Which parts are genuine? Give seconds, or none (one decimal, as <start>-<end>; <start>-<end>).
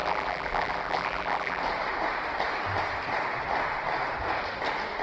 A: 1.6-5.0